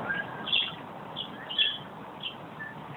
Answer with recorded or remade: recorded